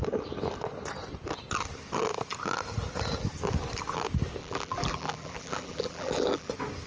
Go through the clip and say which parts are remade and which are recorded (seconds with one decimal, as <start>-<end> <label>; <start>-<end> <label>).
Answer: 0.0-4.4 recorded; 4.4-6.5 remade; 6.5-6.9 recorded